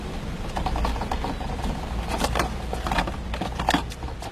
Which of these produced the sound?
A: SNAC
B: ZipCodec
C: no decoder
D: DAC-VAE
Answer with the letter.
C